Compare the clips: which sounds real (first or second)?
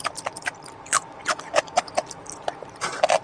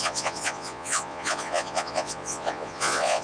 first